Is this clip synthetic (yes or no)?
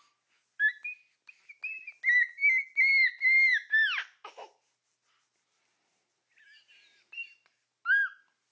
no